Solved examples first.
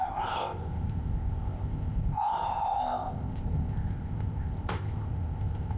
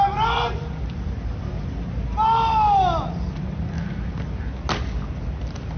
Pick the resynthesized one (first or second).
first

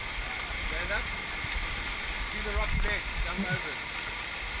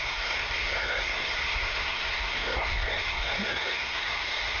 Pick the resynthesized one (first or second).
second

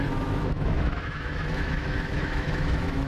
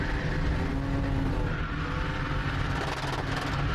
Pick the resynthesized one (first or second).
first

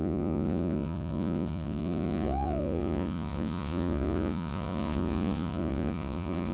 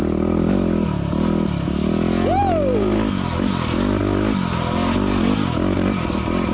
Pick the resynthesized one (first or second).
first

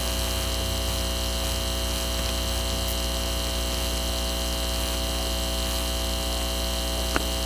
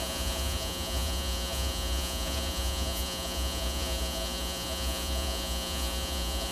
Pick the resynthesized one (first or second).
second